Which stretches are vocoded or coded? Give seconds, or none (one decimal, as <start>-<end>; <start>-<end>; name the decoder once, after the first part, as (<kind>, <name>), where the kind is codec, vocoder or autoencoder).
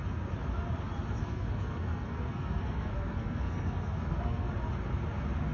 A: 1.2-4.5 (codec, SNAC)